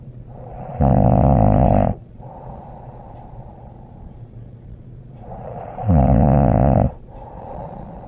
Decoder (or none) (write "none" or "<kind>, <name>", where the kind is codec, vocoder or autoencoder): vocoder, Vocos